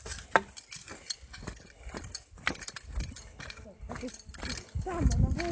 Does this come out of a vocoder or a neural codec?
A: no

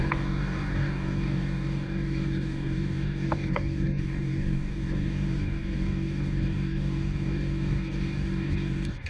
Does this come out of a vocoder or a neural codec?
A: yes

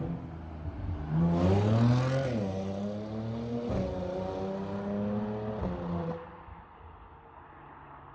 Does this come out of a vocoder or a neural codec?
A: no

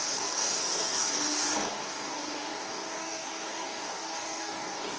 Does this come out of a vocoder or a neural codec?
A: yes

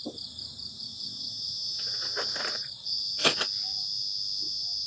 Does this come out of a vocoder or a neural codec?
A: no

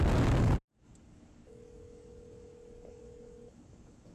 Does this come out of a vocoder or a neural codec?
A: yes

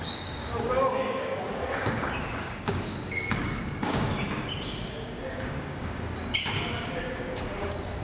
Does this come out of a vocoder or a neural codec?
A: yes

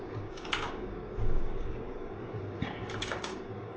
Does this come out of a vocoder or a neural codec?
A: yes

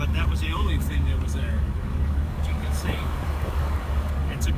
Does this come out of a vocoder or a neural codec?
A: yes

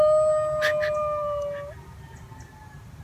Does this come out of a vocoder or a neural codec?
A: no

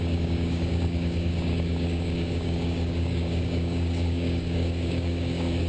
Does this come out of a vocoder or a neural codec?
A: yes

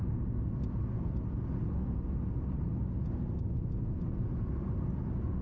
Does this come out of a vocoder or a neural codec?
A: no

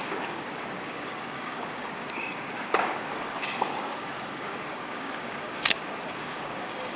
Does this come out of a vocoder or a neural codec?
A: yes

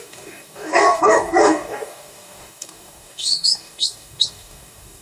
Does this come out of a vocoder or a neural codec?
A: yes